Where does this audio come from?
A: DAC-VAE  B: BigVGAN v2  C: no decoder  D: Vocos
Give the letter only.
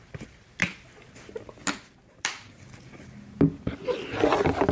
C